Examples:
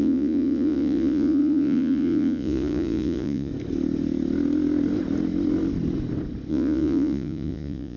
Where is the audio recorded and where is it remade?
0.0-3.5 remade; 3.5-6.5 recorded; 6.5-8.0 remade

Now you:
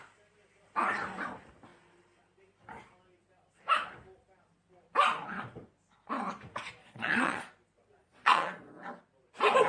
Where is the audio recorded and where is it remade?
0.0-6.8 recorded; 6.8-7.5 remade; 7.5-8.0 recorded; 8.0-8.7 remade; 8.7-9.7 recorded

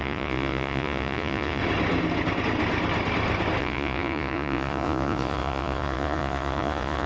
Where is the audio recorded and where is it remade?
0.0-1.6 remade; 1.6-3.6 recorded; 3.6-7.1 remade

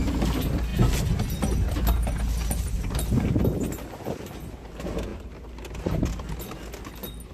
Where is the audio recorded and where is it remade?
0.0-7.3 recorded

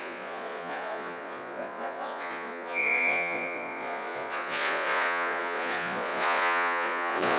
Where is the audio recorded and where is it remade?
0.0-7.4 remade

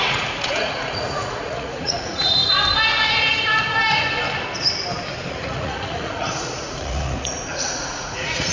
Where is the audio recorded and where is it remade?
0.0-2.4 remade; 2.4-5.3 recorded; 5.3-8.5 remade

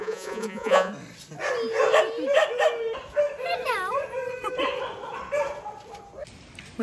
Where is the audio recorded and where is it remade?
0.0-0.9 remade; 0.9-6.8 recorded

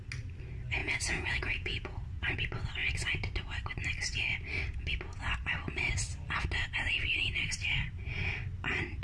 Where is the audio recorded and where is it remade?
0.0-0.8 recorded; 0.8-2.0 remade; 2.0-9.0 recorded